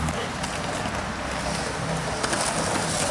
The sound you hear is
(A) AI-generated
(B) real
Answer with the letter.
B